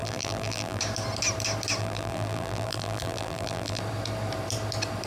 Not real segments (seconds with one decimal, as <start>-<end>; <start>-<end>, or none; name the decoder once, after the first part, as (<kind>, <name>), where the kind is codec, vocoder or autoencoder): 0.0-0.8 (vocoder, BigVGAN v2); 1.8-3.8